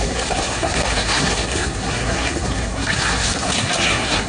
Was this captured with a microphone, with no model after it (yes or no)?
no